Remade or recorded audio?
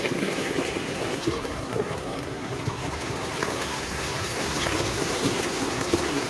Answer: remade